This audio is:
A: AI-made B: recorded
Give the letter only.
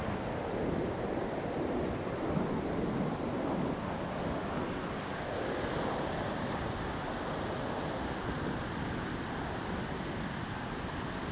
B